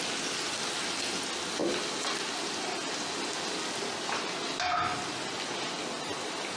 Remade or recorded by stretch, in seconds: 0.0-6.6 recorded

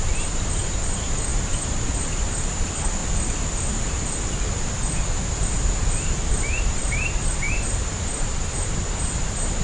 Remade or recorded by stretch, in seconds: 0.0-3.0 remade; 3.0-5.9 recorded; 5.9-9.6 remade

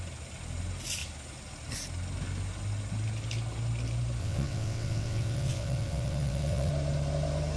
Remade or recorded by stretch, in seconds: 0.0-4.2 recorded; 4.2-6.7 remade; 6.7-7.6 recorded

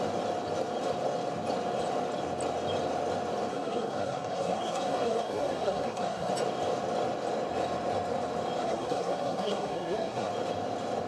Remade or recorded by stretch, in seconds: 0.0-3.5 recorded; 3.5-6.3 remade; 6.3-8.6 recorded; 8.6-10.3 remade; 10.3-11.1 recorded